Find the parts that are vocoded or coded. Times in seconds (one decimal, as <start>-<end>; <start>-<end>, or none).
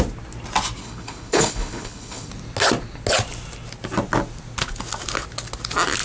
0.8-2.3